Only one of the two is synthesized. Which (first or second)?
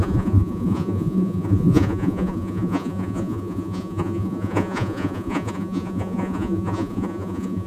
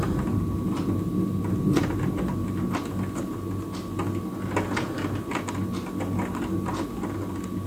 first